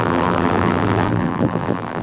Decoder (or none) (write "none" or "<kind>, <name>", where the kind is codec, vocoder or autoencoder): vocoder, BigVGAN v2